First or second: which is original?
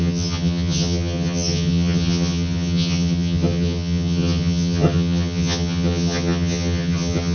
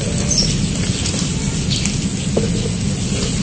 second